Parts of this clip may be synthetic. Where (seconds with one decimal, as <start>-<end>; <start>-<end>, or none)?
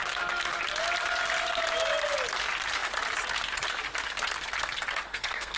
5.1-5.6